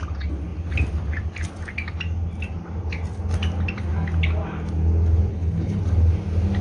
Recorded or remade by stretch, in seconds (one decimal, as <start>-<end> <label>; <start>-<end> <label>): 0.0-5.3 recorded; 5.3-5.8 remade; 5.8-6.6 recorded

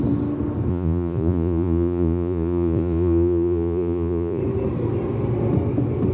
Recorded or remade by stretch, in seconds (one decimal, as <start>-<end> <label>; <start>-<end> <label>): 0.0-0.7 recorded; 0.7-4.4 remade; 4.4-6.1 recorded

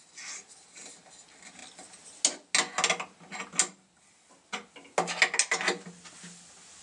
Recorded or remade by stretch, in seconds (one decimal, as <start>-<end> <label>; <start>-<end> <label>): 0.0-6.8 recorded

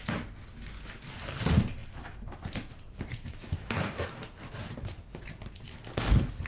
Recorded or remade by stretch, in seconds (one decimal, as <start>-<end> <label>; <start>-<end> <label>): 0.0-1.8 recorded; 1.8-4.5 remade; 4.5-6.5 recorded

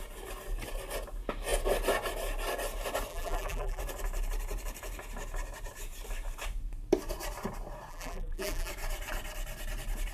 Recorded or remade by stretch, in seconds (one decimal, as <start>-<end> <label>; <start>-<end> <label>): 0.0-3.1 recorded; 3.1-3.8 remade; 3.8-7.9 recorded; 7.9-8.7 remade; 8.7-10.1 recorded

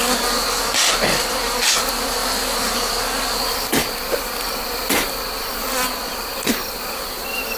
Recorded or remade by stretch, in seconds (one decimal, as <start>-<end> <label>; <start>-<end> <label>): 0.0-7.6 recorded

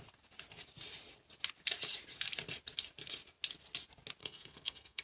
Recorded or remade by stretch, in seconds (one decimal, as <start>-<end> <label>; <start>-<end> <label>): 0.0-4.2 recorded; 4.2-5.0 remade